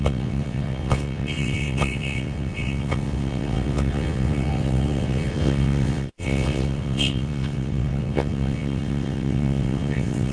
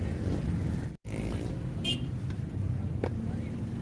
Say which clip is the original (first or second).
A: second